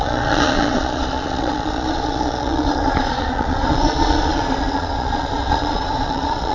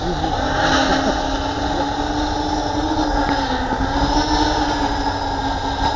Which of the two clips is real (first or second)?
second